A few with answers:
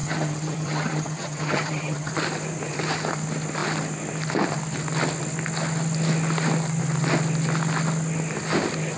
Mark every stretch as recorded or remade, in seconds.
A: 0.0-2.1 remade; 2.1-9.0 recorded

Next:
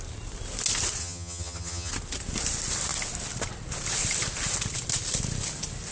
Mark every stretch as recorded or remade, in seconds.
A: 0.0-1.0 recorded; 1.0-1.9 remade; 1.9-5.9 recorded

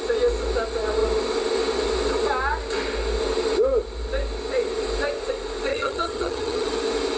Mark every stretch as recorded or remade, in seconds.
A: 0.0-5.7 recorded; 5.7-6.7 remade; 6.7-7.2 recorded

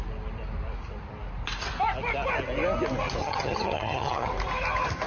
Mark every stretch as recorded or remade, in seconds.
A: 0.0-3.2 recorded; 3.2-4.3 remade; 4.3-5.1 recorded

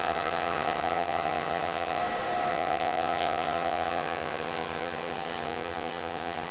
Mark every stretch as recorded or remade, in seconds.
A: 0.0-2.0 remade; 2.0-2.5 recorded; 2.5-6.5 remade